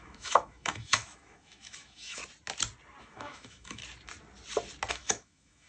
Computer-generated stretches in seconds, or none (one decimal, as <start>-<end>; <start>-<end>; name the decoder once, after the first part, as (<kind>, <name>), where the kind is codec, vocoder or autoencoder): 0.0-2.2 (autoencoder, DAC-VAE); 3.0-3.8; 4.9-5.7